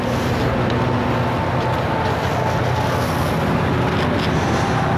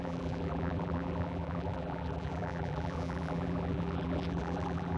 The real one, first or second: first